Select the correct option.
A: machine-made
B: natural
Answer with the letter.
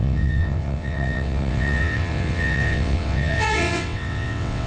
A